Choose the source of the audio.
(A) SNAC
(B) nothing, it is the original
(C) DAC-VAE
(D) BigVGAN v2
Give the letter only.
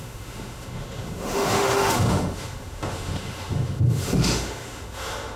C